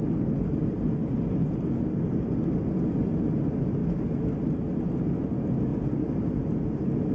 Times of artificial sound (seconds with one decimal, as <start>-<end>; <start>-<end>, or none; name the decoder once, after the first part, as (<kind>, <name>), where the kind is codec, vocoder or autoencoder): none